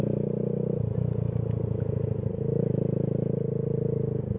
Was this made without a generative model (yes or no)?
yes